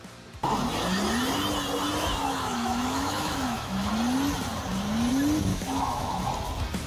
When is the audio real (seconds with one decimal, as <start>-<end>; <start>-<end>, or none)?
0.0-2.2; 3.9-5.5; 6.2-6.9